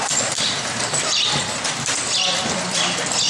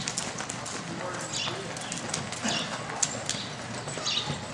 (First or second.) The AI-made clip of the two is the first